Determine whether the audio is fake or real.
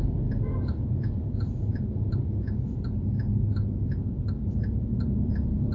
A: real